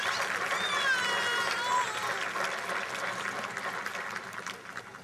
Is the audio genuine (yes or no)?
yes